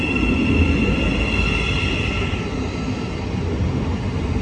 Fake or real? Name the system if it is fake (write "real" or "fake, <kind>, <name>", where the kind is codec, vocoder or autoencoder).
real